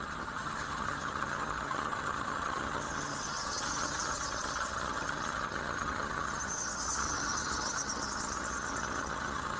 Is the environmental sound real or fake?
fake